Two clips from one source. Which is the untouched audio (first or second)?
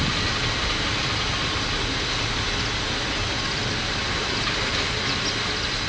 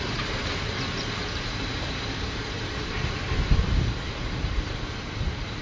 first